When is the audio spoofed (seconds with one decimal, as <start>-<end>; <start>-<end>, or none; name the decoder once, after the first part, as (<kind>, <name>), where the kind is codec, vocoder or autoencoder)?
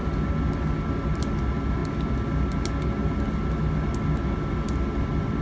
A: none